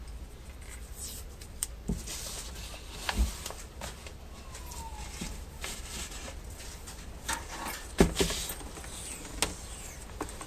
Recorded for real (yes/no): yes